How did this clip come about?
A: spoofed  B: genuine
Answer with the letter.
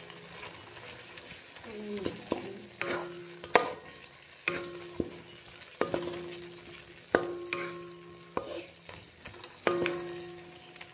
B